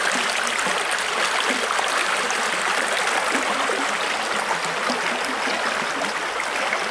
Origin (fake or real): real